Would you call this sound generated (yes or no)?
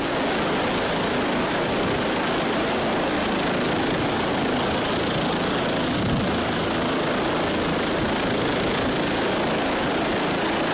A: no